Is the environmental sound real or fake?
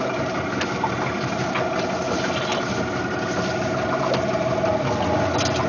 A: real